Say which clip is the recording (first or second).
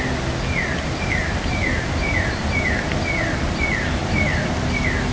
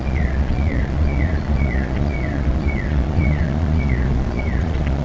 first